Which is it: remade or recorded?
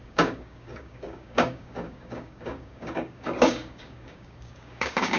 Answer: remade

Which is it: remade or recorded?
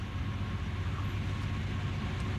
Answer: recorded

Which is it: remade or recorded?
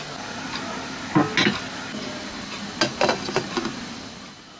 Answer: recorded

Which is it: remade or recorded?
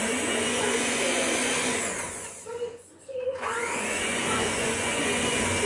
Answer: remade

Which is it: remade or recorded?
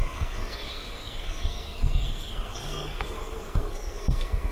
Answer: remade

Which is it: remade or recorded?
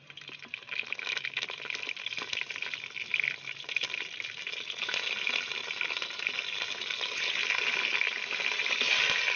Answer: recorded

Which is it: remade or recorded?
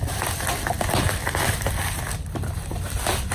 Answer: remade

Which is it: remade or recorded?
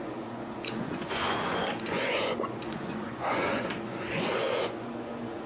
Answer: remade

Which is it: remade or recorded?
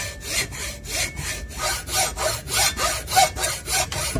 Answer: recorded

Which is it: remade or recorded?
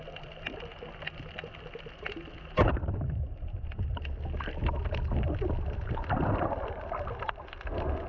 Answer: recorded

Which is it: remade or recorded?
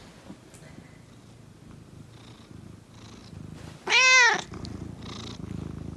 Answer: recorded